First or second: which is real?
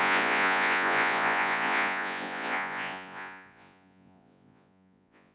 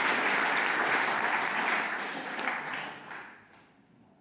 second